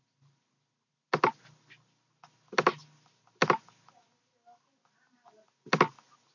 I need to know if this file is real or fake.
real